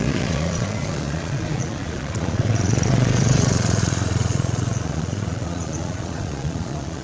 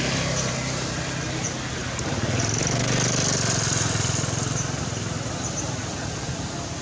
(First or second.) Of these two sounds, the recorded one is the second